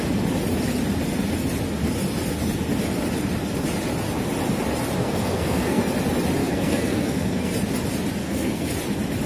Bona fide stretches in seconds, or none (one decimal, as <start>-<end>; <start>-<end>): 0.0-5.0; 5.8-6.4; 7.5-8.2; 8.7-9.3